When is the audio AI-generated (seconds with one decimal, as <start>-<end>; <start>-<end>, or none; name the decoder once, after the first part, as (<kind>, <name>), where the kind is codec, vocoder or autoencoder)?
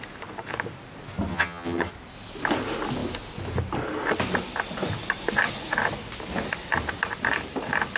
1.3-1.9 (vocoder, HiFi-GAN)